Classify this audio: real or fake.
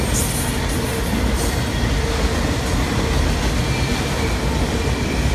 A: real